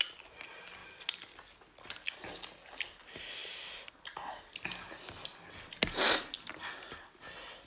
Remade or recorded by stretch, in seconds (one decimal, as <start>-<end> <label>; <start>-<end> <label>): 0.0-7.7 recorded